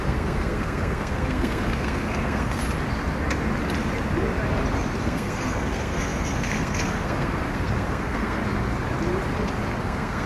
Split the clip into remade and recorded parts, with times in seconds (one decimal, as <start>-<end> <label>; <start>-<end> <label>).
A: 0.0-2.6 remade; 2.6-5.0 recorded; 5.0-8.4 remade; 8.4-9.8 recorded; 9.8-10.3 remade